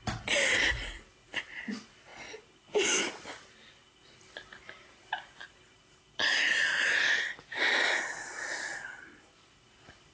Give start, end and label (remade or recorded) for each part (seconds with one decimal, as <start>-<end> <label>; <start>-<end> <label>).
0.0-2.1 recorded; 2.1-6.3 remade; 6.3-10.1 recorded